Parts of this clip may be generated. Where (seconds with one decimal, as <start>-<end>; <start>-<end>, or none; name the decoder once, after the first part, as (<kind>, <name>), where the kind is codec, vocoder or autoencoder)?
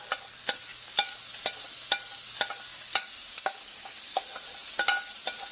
0.7-1.2 (codec, DAC); 2.7-4.2